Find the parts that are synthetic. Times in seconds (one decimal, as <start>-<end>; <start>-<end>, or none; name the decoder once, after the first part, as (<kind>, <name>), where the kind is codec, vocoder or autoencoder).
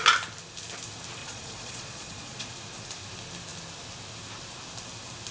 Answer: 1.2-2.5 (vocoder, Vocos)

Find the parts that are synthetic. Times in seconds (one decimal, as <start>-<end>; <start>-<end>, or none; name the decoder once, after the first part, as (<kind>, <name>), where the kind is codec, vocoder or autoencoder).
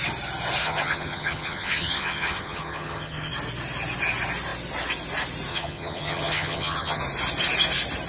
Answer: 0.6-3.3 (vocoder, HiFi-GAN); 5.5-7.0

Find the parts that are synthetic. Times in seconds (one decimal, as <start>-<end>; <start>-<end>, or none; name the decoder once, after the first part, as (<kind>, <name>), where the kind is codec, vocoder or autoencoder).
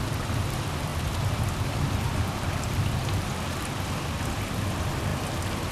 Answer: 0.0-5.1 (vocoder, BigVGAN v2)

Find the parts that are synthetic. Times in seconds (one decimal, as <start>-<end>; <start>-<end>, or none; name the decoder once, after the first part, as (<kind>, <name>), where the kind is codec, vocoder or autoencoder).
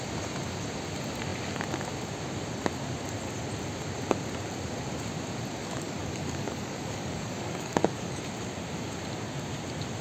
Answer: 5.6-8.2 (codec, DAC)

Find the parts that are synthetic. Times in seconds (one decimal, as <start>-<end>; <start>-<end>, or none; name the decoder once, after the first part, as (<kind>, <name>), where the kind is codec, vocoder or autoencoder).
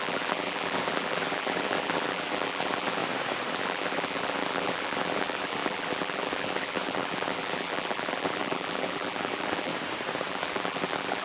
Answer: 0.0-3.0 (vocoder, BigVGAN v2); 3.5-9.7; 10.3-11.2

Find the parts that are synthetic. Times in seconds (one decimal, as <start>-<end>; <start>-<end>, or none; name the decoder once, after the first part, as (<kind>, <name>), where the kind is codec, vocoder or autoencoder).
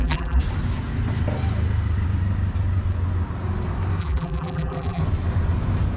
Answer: 0.0-0.4 (vocoder, BigVGAN v2); 4.0-5.0